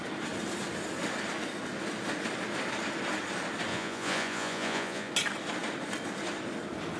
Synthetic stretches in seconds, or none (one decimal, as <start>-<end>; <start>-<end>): 3.7-5.1